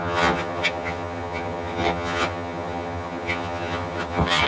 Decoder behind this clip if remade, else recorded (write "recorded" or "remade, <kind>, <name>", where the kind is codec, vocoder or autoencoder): remade, vocoder, HiFi-GAN